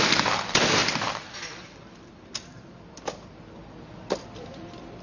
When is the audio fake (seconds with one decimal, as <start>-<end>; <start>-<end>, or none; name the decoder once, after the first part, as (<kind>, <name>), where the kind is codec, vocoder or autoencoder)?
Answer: 0.0-5.0 (vocoder, BigVGAN v2)

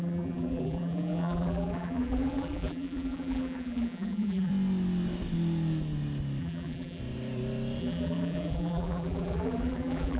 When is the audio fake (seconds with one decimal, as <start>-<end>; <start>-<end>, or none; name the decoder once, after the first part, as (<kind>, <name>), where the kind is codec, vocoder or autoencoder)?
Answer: 0.0-4.5 (vocoder, BigVGAN v2); 6.4-7.0; 7.8-10.2

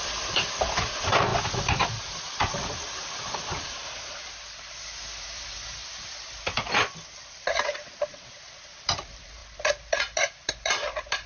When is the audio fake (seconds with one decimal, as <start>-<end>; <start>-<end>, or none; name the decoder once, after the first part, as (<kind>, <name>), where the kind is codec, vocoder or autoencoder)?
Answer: 0.0-11.3 (vocoder, BigVGAN v2)

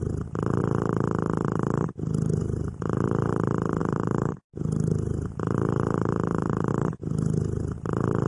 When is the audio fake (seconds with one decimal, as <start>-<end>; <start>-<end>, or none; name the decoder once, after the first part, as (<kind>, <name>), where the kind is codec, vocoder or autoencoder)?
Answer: 2.4-3.3 (vocoder, BigVGAN v2); 3.8-6.7

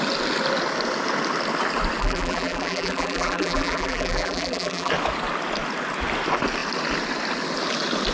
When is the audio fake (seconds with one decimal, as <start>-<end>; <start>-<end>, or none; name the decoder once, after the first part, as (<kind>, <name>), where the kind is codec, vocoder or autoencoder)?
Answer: 2.0-4.9 (vocoder, BigVGAN v2)

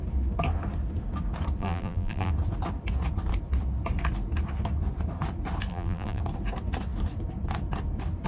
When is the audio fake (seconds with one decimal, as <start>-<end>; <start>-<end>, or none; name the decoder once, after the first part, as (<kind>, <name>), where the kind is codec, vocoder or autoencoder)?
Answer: 1.6-2.3 (vocoder, BigVGAN v2); 5.7-6.2

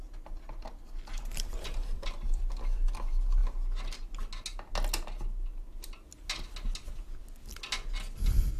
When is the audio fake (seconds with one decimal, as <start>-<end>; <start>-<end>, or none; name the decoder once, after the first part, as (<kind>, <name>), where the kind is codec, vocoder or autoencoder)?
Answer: 1.3-2.4 (vocoder, BigVGAN v2)

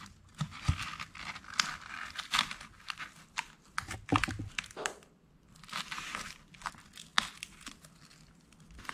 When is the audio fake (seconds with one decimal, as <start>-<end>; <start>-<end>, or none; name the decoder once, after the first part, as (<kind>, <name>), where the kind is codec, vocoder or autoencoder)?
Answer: 4.1-5.3 (vocoder, BigVGAN v2)